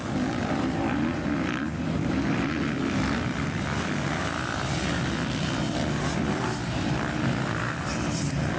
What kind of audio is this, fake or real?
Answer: real